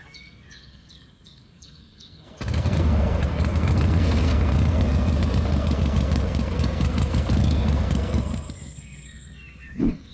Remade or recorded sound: remade